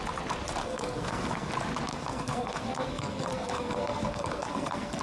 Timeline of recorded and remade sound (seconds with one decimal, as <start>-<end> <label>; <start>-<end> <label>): 0.0-0.6 recorded; 0.6-1.5 remade; 1.5-1.9 recorded; 1.9-5.0 remade

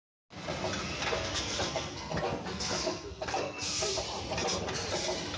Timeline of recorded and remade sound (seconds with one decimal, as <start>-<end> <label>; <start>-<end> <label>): 0.0-0.8 recorded; 0.8-4.0 remade; 4.0-5.4 recorded

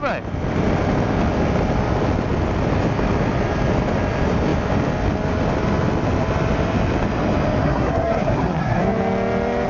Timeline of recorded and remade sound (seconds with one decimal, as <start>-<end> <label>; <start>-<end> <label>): 0.0-7.6 recorded; 7.6-8.8 remade; 8.8-9.7 recorded

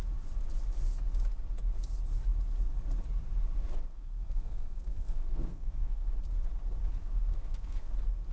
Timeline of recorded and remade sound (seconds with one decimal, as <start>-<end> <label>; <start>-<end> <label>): 0.0-3.9 recorded; 3.9-6.1 remade; 6.1-7.0 recorded; 7.0-7.9 remade; 7.9-8.3 recorded

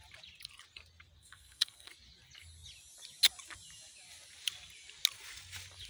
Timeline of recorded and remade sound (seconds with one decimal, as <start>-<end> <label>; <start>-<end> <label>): 0.0-1.2 recorded; 1.2-1.9 remade; 1.9-5.9 recorded

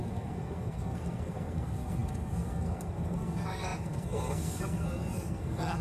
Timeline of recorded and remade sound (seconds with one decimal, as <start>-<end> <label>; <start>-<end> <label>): 0.0-5.8 remade

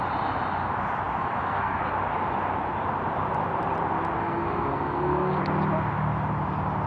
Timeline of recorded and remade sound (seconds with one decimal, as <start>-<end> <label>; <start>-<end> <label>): 0.0-1.2 recorded; 1.2-1.8 remade; 1.8-4.2 recorded; 4.2-5.4 remade; 5.4-6.9 recorded